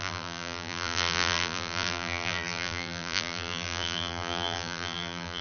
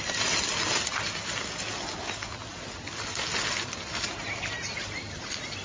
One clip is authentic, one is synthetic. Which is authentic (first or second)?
second